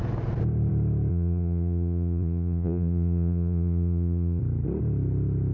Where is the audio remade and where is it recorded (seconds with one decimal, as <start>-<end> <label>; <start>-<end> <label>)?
0.0-1.1 recorded; 1.1-4.4 remade; 4.4-5.5 recorded